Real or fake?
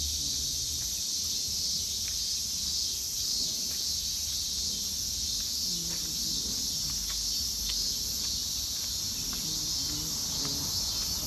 real